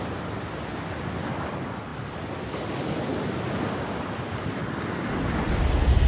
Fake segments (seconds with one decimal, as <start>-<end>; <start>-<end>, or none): 1.9-5.6